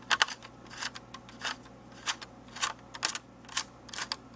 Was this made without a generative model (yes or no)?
yes